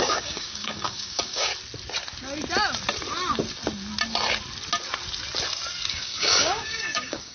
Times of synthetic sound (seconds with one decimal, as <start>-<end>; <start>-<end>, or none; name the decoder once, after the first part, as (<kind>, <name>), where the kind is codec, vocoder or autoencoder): 0.0-1.5 (codec, DAC); 5.9-7.3